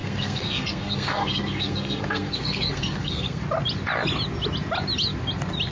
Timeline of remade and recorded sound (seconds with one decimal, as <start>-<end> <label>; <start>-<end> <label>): 0.0-3.4 remade; 3.4-5.7 recorded